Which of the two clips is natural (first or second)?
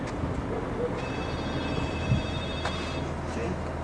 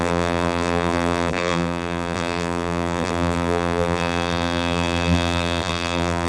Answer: first